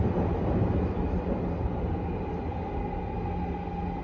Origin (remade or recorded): recorded